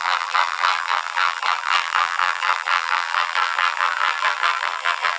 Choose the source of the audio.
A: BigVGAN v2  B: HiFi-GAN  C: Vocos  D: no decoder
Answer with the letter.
A